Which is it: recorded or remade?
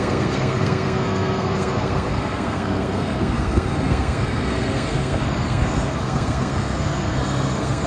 remade